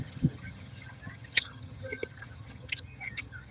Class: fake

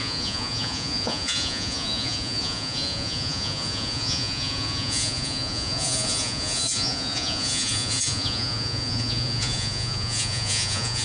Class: fake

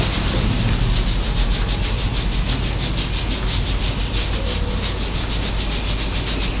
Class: real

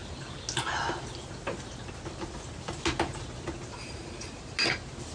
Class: real